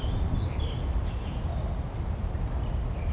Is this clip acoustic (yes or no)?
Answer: yes